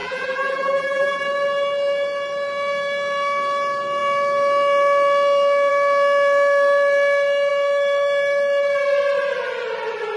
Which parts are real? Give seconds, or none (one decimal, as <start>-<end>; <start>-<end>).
1.2-10.2